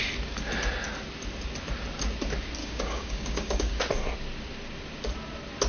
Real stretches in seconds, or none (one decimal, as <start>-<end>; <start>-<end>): 0.0-2.6; 3.8-5.7